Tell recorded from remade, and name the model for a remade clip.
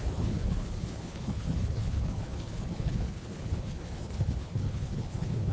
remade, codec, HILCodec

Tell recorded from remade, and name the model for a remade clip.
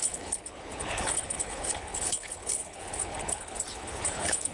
remade, codec, HILCodec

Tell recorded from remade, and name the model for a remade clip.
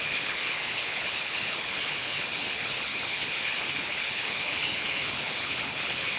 remade, codec, HILCodec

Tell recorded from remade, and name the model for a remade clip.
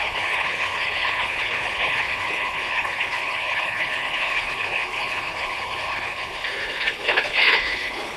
remade, codec, HILCodec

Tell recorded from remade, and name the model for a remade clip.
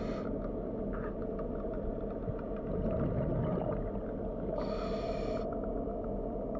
recorded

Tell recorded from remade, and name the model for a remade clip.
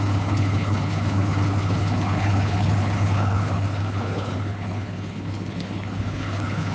remade, codec, HILCodec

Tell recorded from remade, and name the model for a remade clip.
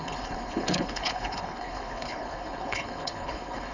remade, codec, HILCodec